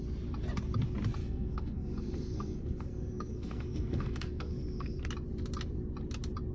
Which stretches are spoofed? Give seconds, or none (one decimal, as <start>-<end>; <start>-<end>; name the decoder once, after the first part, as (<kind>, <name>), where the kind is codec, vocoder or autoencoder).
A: 1.2-5.1 (codec, SNAC)